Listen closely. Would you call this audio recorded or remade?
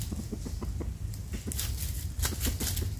recorded